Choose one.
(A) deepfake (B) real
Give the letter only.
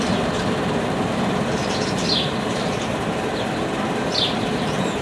A